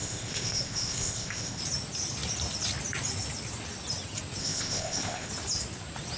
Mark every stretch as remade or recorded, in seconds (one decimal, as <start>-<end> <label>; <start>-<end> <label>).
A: 0.0-1.6 remade; 1.6-4.4 recorded; 4.4-5.3 remade; 5.3-6.2 recorded